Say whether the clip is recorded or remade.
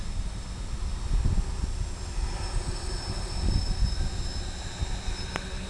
recorded